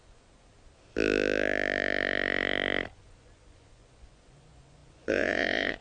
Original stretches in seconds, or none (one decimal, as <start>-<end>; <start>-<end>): 0.5-2.9